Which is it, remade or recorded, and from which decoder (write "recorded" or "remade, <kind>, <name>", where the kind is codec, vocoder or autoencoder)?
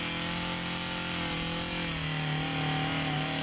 recorded